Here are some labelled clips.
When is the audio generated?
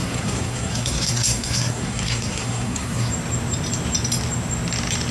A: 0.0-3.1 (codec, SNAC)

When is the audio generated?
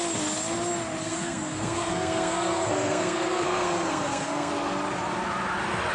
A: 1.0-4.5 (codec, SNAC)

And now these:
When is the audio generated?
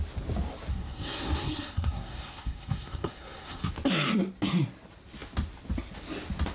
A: 0.7-3.7 (codec, SNAC)